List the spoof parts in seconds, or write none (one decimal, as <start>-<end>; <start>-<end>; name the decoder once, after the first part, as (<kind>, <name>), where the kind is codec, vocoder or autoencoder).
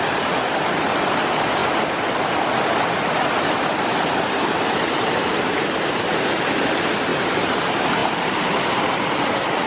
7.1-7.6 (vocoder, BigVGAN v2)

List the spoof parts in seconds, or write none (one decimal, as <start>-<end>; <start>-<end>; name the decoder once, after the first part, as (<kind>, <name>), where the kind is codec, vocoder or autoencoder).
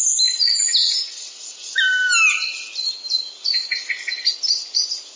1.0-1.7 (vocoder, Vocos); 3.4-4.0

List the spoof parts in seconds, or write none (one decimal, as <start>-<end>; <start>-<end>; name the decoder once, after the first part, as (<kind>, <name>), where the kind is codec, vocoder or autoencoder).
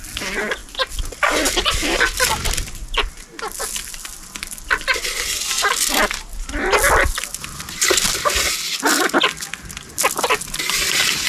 none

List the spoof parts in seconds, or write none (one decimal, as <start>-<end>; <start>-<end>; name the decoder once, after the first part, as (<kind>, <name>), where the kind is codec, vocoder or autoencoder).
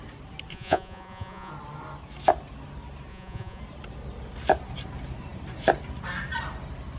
0.5-1.5 (vocoder, Vocos); 3.1-3.6